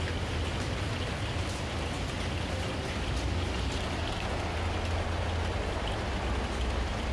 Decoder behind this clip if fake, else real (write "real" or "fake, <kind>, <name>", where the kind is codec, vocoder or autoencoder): real